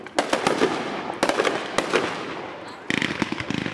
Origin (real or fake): real